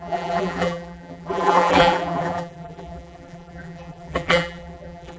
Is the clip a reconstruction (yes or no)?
yes